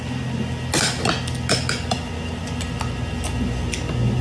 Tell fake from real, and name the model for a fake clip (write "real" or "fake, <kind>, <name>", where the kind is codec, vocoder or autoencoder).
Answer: real